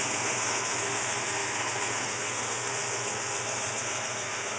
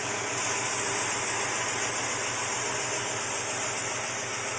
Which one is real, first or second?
second